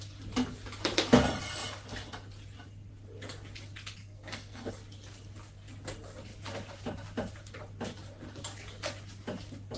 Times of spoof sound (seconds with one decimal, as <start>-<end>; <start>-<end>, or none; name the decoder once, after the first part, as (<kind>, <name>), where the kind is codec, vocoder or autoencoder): 4.0-4.7 (codec, SNAC)